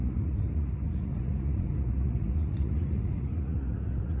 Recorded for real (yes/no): no